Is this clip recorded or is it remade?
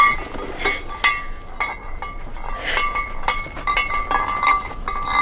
recorded